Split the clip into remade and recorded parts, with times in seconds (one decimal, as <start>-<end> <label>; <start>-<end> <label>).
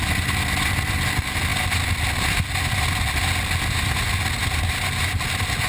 0.0-5.7 recorded